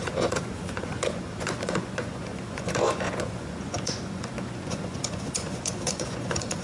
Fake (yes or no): yes